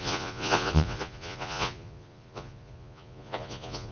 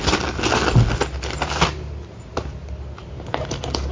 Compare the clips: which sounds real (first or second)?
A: second